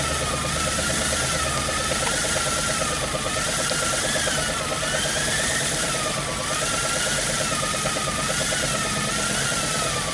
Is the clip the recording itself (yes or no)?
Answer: yes